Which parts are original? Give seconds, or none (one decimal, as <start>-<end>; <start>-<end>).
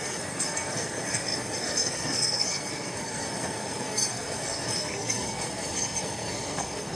none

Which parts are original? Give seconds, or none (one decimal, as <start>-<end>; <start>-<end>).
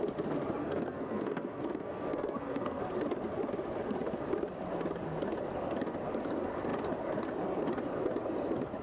0.0-0.6; 2.8-8.8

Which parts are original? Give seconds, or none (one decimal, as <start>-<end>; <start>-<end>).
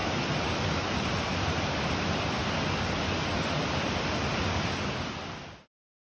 0.0-6.1